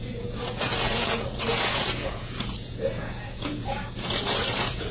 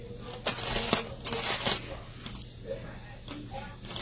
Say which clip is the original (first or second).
second